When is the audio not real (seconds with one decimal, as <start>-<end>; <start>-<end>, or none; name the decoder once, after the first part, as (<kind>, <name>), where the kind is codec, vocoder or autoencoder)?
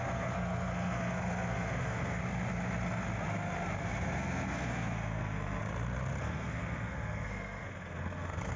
0.0-2.2 (codec, SNAC); 3.8-5.6; 6.2-8.6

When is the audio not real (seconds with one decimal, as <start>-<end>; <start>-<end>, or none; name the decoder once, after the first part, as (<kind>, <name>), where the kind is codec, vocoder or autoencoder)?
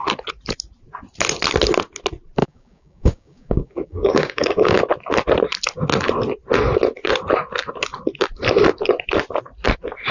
2.4-4.9 (codec, DAC)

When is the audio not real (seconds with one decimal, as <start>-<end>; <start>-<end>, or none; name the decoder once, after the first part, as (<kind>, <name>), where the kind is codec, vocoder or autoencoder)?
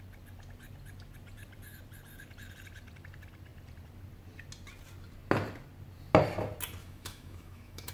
6.8-7.9 (autoencoder, DAC-VAE)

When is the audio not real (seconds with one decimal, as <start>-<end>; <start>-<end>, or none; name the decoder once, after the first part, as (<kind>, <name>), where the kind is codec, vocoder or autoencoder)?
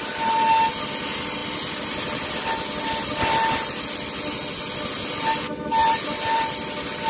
5.8-6.5 (vocoder, BigVGAN v2)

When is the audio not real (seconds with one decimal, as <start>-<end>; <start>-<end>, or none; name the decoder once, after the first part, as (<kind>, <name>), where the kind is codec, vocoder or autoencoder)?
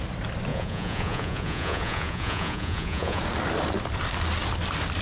0.5-3.2 (vocoder, Vocos)